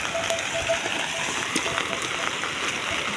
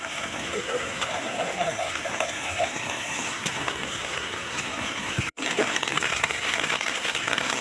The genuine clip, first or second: first